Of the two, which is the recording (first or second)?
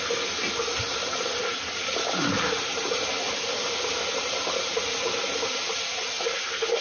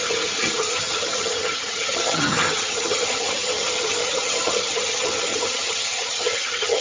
first